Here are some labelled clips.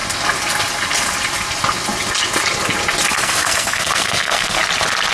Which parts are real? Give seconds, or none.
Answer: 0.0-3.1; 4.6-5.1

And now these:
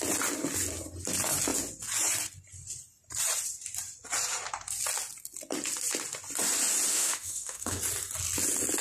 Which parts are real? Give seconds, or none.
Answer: 0.0-6.9; 7.8-8.8

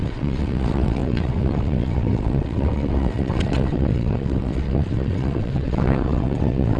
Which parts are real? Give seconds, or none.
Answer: none

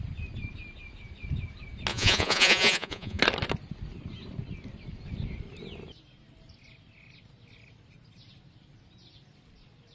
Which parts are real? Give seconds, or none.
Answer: 0.0-1.9; 3.2-9.9

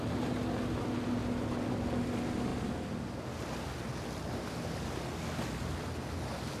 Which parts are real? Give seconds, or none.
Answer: 0.0-6.6

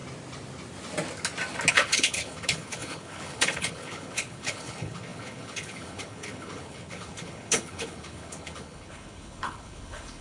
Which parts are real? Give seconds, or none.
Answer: 0.0-1.7

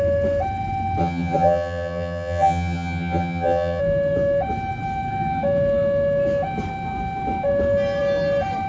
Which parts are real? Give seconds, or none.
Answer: 0.0-1.0; 3.8-8.7

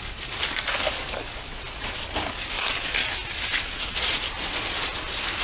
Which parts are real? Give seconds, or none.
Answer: 1.5-2.3; 3.0-5.4